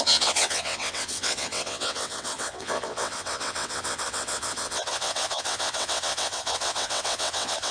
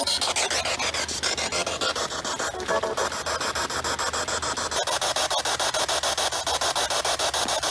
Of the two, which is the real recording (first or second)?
second